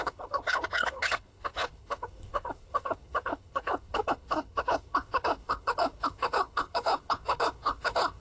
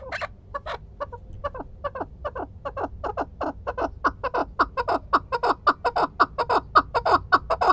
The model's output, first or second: first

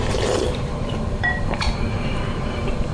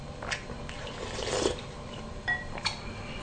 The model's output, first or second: first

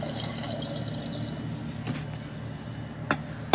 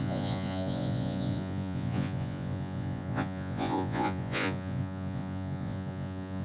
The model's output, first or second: second